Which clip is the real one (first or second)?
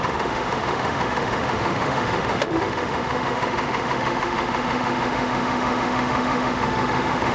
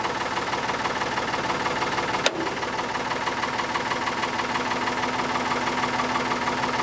second